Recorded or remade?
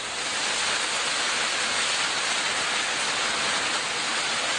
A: recorded